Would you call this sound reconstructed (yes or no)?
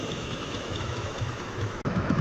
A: yes